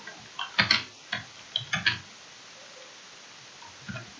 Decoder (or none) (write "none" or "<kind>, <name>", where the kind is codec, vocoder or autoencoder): none